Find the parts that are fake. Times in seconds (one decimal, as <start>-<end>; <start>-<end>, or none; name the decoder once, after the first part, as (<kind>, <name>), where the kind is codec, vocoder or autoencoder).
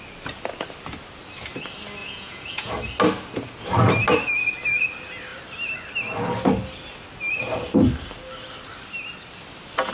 2.0-2.7 (vocoder, Vocos)